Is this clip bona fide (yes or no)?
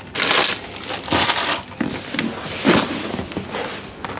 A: yes